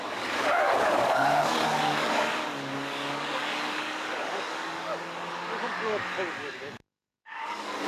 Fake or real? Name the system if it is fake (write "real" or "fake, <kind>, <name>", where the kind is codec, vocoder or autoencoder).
fake, codec, DAC